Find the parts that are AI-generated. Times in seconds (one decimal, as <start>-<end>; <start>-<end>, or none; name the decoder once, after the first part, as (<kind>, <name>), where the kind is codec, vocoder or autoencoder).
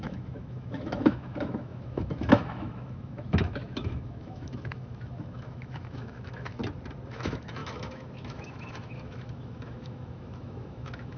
0.0-6.6 (autoencoder, DAC-VAE); 7.1-11.2